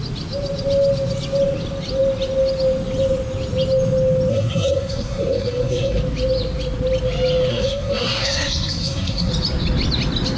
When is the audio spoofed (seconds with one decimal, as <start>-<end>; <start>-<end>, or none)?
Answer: 4.3-6.0; 7.5-9.3